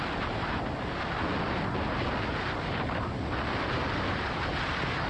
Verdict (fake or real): real